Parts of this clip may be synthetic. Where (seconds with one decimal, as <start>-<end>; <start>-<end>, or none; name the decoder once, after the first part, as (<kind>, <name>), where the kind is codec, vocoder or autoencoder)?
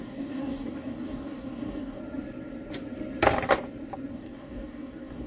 0.0-2.0 (codec, DAC); 4.1-5.3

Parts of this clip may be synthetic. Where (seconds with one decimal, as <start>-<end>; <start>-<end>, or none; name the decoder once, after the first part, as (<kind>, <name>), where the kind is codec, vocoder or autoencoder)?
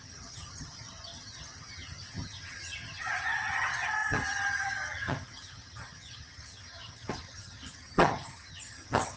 0.0-9.2 (vocoder, HiFi-GAN)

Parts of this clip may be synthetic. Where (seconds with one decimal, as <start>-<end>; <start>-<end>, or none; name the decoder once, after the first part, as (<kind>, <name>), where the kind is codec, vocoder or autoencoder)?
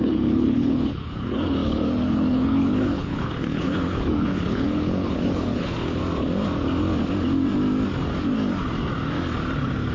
0.0-6.0 (codec, HILCodec)